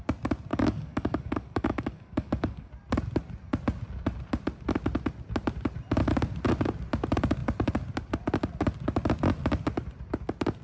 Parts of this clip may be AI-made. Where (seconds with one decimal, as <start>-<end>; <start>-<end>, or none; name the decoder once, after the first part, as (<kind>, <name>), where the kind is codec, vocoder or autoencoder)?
0.5-2.7 (codec, DAC)